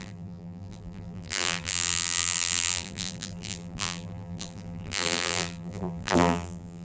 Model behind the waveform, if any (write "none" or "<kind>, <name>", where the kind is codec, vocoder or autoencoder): vocoder, BigVGAN v2